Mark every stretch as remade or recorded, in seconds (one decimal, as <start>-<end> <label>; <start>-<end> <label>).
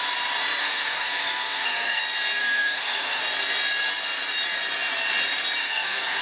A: 0.0-0.6 recorded; 0.6-2.0 remade; 2.0-2.4 recorded; 2.4-3.2 remade; 3.2-5.6 recorded; 5.6-6.2 remade